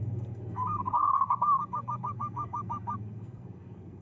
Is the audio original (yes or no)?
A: no